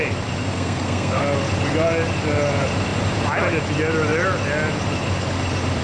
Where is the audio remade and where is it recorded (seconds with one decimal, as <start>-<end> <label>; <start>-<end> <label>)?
0.0-0.4 recorded; 0.4-1.2 remade; 1.2-5.8 recorded